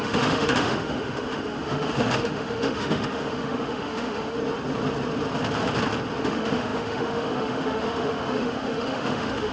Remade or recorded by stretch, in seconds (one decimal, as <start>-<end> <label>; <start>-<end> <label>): 0.0-4.4 remade; 4.4-6.2 recorded; 6.2-9.5 remade